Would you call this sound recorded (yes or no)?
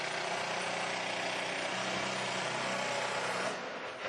yes